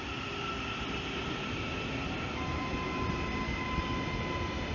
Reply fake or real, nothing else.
real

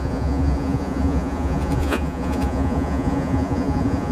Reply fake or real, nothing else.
fake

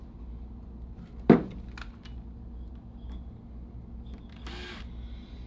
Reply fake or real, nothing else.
real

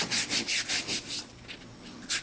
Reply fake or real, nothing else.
real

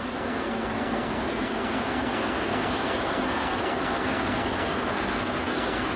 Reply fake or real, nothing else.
fake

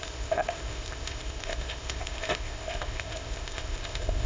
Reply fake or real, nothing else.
fake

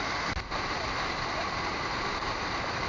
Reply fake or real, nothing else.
real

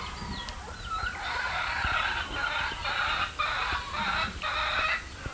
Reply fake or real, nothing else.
real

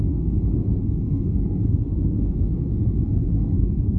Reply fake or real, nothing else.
fake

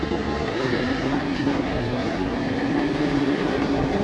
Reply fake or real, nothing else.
fake